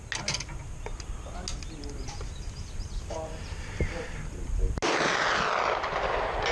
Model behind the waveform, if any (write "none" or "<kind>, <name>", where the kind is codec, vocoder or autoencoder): none